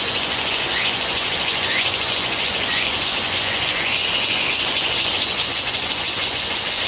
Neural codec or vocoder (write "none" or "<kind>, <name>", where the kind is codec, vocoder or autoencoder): vocoder, Vocos